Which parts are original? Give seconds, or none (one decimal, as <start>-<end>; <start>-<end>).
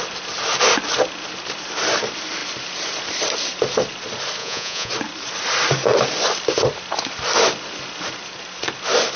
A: 0.0-4.4; 4.9-9.2